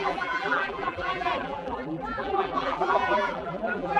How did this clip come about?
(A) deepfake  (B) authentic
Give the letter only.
A